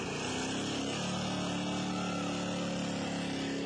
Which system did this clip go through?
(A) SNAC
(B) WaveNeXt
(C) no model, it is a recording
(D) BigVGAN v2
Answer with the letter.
C